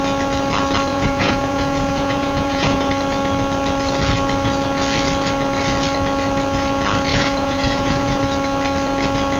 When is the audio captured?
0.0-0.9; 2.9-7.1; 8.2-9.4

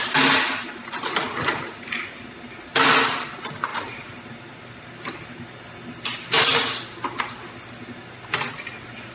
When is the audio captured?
0.0-9.1